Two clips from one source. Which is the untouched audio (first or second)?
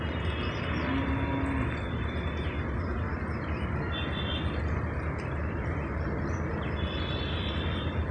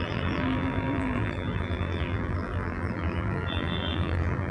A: first